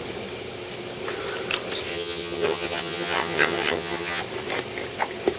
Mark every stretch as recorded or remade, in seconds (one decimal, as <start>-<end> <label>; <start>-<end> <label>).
0.0-1.9 recorded; 1.9-4.2 remade; 4.2-5.4 recorded